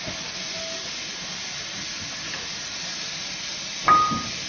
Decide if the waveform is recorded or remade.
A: recorded